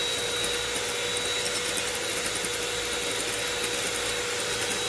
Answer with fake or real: real